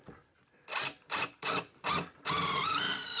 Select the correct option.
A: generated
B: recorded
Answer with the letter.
B